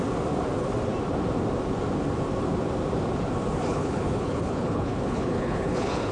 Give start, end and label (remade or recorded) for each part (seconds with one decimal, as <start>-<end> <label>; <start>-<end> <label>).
0.0-3.7 recorded; 3.7-6.1 remade